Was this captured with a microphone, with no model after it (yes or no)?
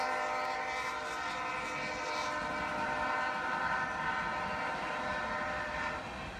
yes